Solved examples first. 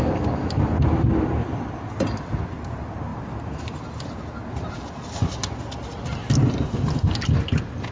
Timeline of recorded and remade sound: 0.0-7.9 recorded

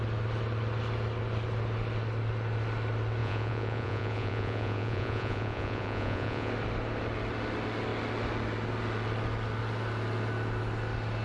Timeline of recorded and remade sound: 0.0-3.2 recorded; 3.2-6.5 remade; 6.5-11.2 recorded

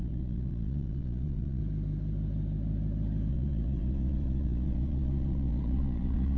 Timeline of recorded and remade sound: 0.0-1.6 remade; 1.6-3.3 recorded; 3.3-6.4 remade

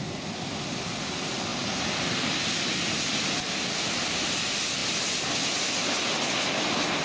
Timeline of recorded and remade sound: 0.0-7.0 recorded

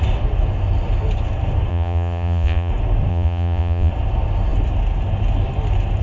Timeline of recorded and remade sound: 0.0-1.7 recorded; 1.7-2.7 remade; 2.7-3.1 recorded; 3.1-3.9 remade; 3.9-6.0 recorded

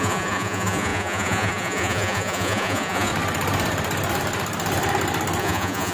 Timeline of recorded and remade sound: 0.0-3.1 remade; 3.1-5.4 recorded; 5.4-5.9 remade